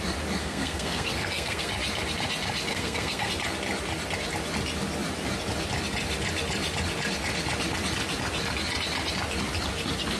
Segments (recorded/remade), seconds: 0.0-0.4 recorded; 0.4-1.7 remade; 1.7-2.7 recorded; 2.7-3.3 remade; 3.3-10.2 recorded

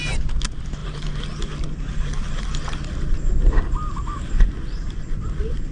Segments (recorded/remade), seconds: 0.0-5.7 recorded

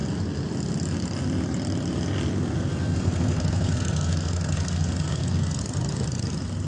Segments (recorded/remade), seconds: 0.0-2.7 recorded; 2.7-5.6 remade; 5.6-6.7 recorded

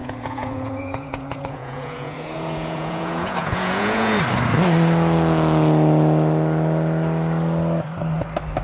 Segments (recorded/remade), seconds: 0.0-4.2 remade; 4.2-8.6 recorded